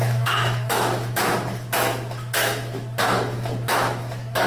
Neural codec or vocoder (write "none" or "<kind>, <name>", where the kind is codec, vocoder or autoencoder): autoencoder, DAC-VAE